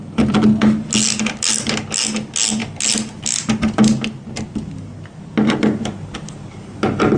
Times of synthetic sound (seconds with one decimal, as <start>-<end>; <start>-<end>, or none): none